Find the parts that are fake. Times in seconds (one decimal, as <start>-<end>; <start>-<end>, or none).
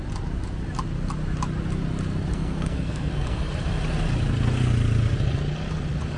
2.3-3.4